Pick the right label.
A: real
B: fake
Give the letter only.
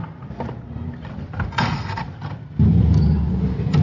B